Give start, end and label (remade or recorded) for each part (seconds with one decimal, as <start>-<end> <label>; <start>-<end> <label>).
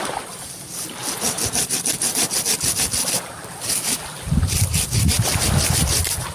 0.0-6.3 recorded